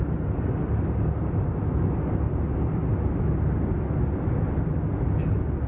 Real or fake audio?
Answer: real